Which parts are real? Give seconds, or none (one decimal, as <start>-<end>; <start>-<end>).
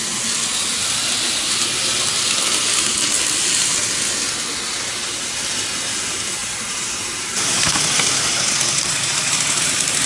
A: 0.0-6.4